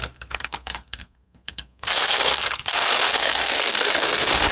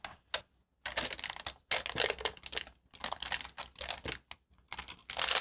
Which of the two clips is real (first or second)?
second